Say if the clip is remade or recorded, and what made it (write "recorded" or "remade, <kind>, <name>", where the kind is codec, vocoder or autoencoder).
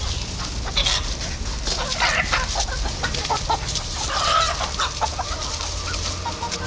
recorded